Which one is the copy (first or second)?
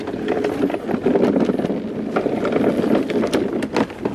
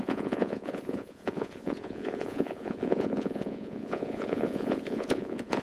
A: second